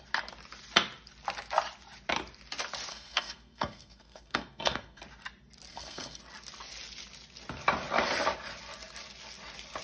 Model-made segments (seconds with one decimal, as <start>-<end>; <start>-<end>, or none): 2.9-5.0; 5.7-6.2